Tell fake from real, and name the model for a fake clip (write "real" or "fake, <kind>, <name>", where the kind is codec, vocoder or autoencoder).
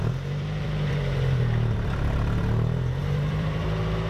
fake, vocoder, BigVGAN v2